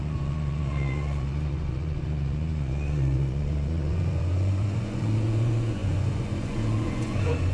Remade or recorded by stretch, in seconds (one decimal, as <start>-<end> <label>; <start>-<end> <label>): 0.0-7.5 remade